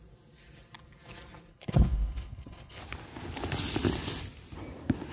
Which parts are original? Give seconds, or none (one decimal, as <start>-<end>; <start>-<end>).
0.0-1.5; 2.8-5.1